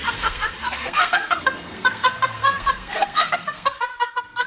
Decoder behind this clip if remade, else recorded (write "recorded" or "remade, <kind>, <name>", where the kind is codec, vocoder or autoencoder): remade, codec, SNAC